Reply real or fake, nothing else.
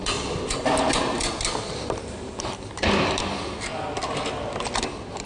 real